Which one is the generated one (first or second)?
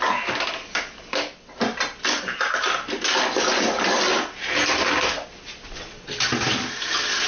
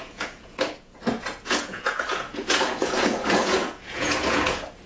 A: second